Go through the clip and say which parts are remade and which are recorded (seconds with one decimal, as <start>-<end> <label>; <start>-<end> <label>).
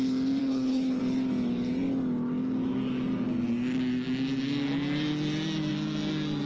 0.0-0.4 recorded; 0.4-1.0 remade; 1.0-6.5 recorded